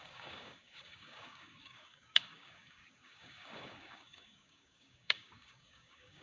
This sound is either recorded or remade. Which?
remade